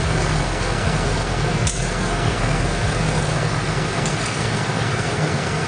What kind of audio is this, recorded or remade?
remade